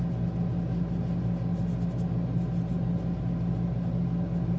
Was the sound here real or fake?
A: real